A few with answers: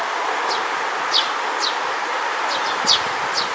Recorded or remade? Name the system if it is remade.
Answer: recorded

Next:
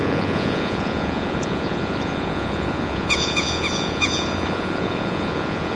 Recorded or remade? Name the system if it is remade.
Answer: remade, vocoder, Vocos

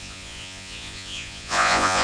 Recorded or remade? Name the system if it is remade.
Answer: remade, vocoder, Vocos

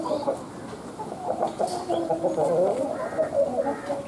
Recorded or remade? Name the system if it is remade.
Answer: recorded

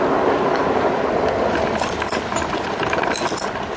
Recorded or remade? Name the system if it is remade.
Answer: recorded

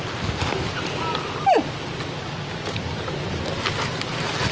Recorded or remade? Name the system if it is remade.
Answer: recorded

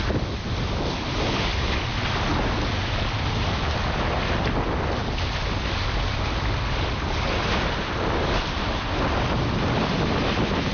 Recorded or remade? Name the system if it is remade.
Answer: recorded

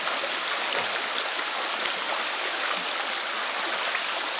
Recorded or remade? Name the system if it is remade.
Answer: recorded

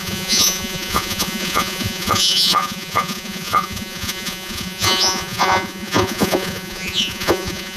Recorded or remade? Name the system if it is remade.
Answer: remade, vocoder, Vocos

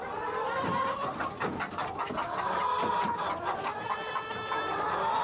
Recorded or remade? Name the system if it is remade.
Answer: recorded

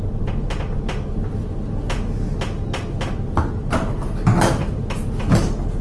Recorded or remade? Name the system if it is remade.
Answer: recorded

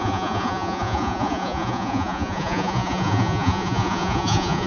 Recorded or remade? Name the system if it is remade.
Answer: remade, vocoder, Vocos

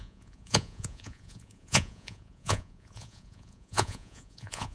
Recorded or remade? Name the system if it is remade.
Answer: remade, vocoder, Vocos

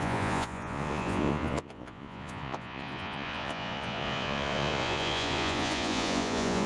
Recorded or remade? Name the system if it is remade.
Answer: remade, vocoder, Vocos